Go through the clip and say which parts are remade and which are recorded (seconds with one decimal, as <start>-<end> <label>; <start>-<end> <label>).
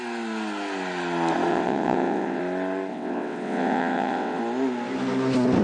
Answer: 0.0-1.5 recorded; 1.5-2.4 remade; 2.4-2.9 recorded; 2.9-4.4 remade; 4.4-5.6 recorded